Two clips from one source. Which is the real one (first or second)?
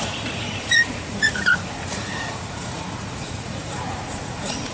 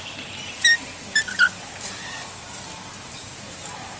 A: second